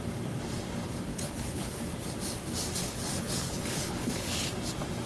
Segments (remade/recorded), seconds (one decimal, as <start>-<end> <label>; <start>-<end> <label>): 0.0-1.1 recorded; 1.1-1.8 remade; 1.8-2.8 recorded; 2.8-4.5 remade; 4.5-5.1 recorded